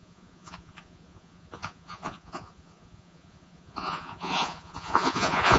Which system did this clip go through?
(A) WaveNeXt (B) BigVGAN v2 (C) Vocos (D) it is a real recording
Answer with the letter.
C